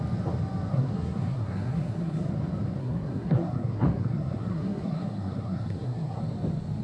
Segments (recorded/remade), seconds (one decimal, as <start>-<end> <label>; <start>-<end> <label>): 0.0-0.7 recorded; 0.7-2.3 remade; 2.3-2.8 recorded; 2.8-6.2 remade; 6.2-6.8 recorded